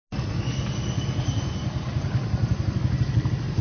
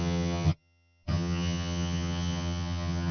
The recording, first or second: first